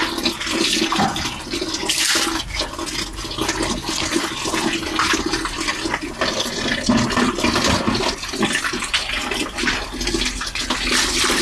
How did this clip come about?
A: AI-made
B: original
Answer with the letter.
B